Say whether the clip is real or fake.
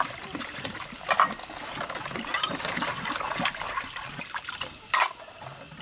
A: real